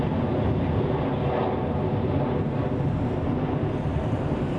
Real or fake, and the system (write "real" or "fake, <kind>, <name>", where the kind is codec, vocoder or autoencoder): real